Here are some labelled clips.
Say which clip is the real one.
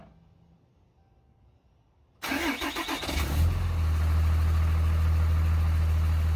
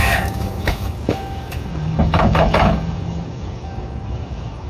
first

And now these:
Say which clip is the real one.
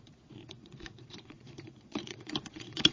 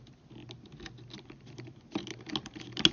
second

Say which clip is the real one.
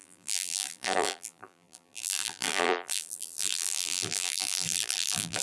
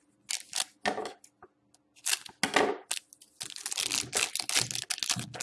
second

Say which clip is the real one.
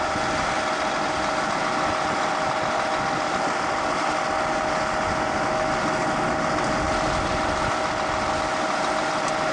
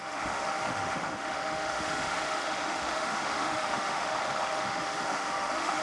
first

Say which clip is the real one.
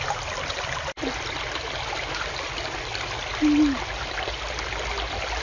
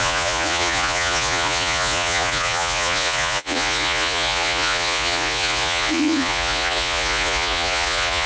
first